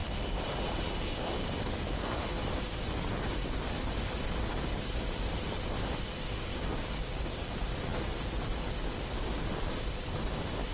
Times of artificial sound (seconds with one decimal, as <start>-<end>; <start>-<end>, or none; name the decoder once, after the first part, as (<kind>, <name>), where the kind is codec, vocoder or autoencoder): 6.5-7.5 (codec, DAC)